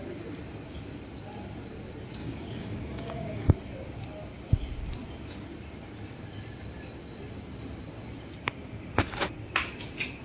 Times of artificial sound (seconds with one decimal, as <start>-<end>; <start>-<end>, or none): 2.2-3.5